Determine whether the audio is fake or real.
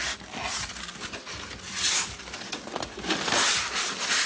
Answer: real